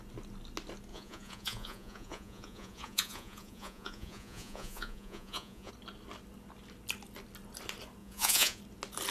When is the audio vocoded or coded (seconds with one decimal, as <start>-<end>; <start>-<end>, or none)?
0.9-5.7; 8.0-8.6